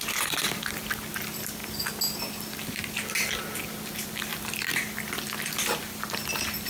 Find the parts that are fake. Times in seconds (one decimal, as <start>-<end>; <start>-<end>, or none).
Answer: none